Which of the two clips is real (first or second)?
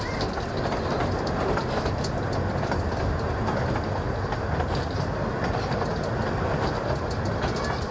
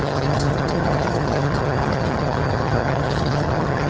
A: first